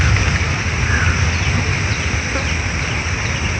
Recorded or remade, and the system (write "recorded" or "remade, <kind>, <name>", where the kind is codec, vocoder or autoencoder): recorded